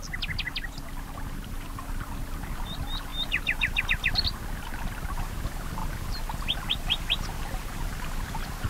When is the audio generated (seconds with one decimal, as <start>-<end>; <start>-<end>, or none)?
none